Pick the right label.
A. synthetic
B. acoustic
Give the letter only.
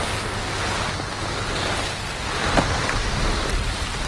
B